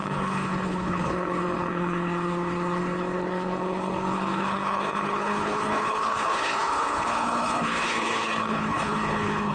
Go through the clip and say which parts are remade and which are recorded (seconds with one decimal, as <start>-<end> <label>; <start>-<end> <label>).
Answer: 0.0-9.5 remade